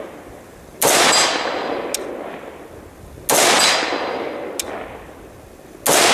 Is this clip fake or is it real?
real